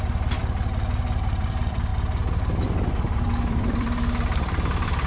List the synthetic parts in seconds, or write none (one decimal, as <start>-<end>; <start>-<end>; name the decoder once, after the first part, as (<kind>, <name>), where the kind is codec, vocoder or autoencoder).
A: 0.0-0.4 (vocoder, BigVGAN v2); 0.9-5.1